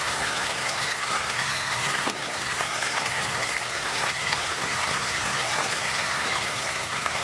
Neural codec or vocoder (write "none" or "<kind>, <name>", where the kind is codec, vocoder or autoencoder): codec, SNAC